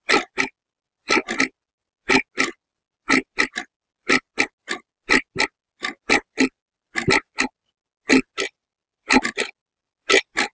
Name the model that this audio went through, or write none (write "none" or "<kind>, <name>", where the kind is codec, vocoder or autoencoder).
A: none